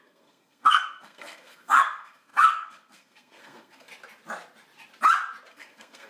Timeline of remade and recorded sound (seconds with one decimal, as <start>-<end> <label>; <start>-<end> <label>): 0.0-3.9 remade; 3.9-5.5 recorded; 5.5-6.1 remade